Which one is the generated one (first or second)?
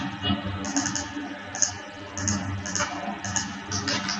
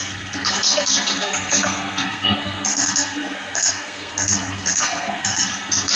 second